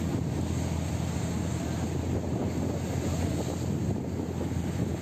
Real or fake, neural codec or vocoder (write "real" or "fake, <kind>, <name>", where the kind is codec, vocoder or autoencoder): real